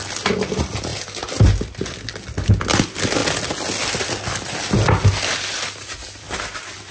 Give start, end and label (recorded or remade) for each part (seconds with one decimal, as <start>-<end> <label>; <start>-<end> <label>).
0.0-6.9 recorded